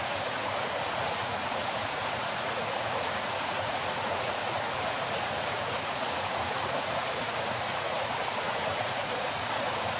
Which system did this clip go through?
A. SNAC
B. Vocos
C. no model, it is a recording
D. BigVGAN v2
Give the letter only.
B